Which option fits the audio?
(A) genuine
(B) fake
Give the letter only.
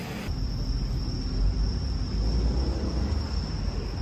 A